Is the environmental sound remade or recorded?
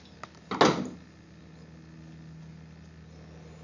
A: recorded